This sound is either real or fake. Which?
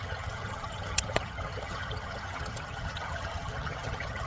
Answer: fake